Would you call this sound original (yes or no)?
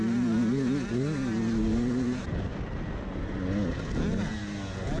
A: yes